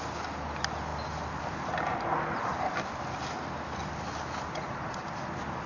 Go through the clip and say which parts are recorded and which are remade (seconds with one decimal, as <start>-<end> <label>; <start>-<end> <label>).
0.0-5.7 recorded